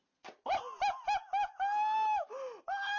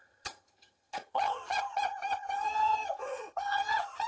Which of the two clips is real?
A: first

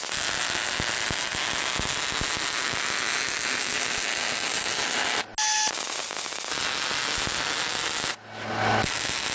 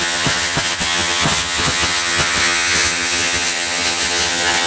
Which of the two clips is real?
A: first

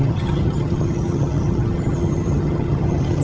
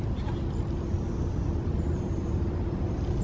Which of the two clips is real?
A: second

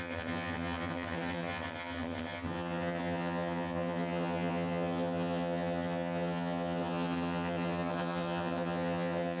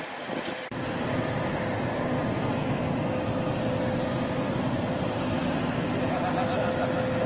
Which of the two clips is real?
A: second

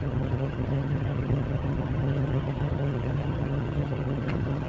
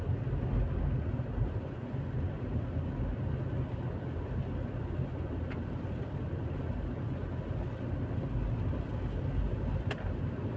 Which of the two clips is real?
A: second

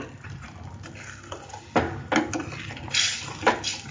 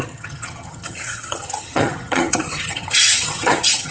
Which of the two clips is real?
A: first